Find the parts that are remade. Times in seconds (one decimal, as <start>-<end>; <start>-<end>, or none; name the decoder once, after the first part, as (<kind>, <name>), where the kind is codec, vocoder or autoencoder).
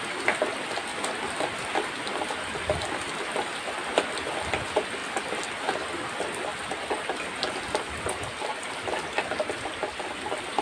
none